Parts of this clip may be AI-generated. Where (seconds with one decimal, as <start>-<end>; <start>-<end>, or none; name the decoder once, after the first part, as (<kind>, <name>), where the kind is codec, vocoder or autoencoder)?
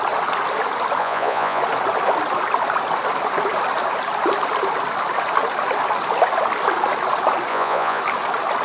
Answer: 1.0-1.6 (vocoder, Vocos); 7.5-8.0